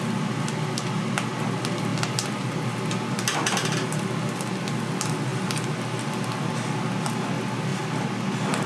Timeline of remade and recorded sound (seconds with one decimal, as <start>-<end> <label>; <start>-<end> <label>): 0.0-8.7 recorded